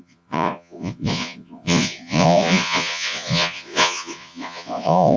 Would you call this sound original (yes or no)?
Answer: no